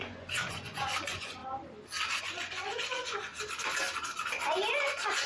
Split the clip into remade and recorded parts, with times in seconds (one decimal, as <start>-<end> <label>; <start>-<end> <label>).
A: 0.0-1.4 remade; 1.4-2.2 recorded; 2.2-3.3 remade; 3.3-4.5 recorded; 4.5-5.3 remade